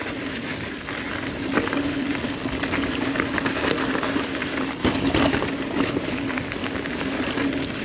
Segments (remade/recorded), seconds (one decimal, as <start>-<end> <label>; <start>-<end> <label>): 0.0-6.6 recorded; 6.6-7.2 remade; 7.2-7.8 recorded